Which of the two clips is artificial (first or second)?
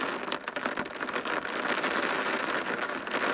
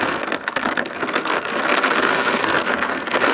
second